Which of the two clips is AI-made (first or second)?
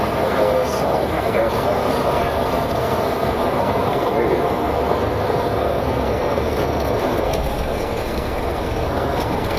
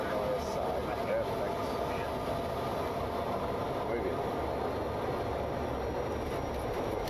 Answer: first